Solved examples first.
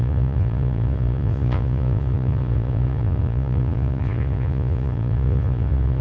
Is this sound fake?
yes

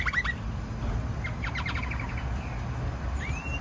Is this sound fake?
no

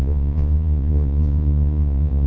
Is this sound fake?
yes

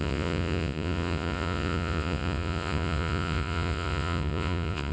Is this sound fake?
yes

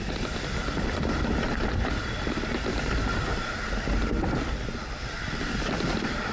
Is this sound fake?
no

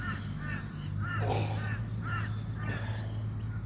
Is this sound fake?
no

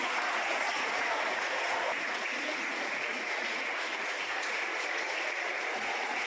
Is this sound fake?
yes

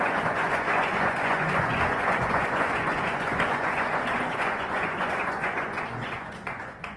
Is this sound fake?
yes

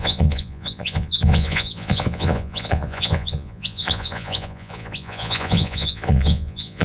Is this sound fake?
yes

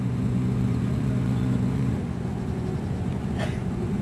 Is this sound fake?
yes